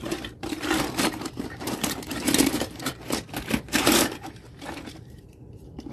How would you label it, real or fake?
fake